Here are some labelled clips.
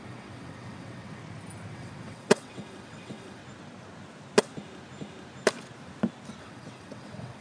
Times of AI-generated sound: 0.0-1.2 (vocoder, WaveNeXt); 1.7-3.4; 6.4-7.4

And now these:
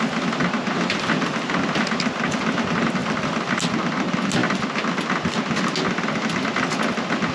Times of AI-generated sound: 3.0-3.5 (vocoder, BigVGAN v2)